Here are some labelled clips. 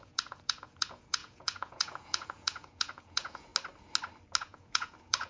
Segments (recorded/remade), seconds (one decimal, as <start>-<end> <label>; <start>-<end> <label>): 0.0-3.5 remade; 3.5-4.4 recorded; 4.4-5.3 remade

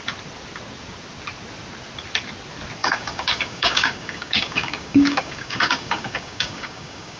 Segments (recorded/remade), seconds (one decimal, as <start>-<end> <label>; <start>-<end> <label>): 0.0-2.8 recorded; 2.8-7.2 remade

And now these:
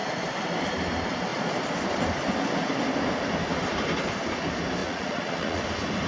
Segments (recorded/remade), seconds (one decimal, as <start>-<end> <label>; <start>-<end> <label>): 0.0-4.8 recorded; 4.8-5.6 remade; 5.6-6.1 recorded

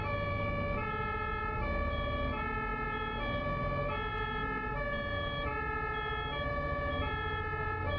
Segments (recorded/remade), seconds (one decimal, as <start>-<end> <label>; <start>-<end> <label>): 0.0-8.0 recorded

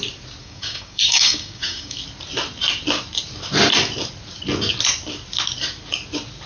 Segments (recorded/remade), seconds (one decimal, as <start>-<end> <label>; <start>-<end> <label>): 0.0-0.4 recorded; 0.4-2.0 remade; 2.0-6.5 recorded

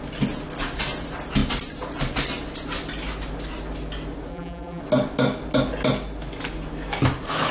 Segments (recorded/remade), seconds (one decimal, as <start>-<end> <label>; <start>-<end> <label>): 0.0-4.3 recorded; 4.3-4.8 remade; 4.8-7.5 recorded

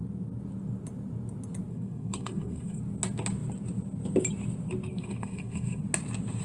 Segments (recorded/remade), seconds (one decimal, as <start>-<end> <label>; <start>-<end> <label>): 0.0-1.7 recorded; 1.7-2.8 remade; 2.8-4.9 recorded; 4.9-5.8 remade; 5.8-6.4 recorded

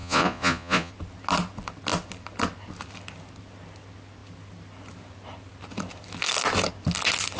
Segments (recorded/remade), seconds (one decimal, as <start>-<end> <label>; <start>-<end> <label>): 0.0-0.9 remade; 0.9-7.4 recorded